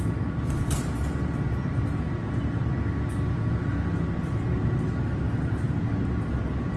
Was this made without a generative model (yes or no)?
yes